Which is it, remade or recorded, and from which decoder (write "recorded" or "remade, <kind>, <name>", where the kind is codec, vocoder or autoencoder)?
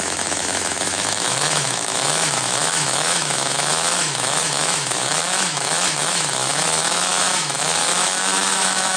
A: remade, autoencoder, DAC-VAE